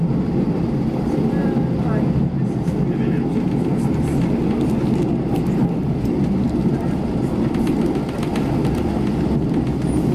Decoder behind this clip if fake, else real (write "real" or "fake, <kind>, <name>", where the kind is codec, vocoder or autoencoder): real